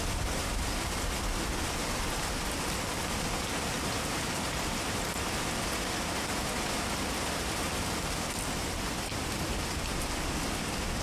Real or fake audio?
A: real